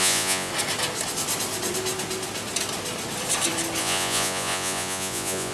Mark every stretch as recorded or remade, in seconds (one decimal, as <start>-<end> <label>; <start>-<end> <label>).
0.0-0.5 remade; 0.5-3.8 recorded; 3.8-5.5 remade